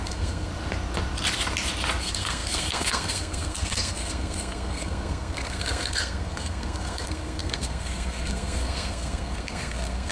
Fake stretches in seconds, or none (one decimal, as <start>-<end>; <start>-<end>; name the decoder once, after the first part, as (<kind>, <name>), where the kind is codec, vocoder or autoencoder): 0.0-0.5 (codec, SNAC); 2.0-10.1